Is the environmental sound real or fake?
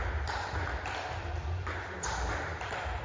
real